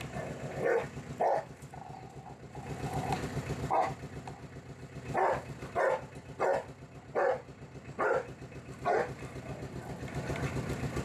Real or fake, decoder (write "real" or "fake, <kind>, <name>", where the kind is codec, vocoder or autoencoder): real